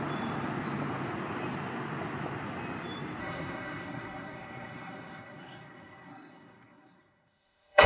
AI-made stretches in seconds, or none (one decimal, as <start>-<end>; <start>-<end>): 3.2-7.9